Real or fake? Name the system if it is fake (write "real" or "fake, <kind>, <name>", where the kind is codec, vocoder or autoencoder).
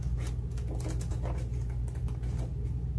real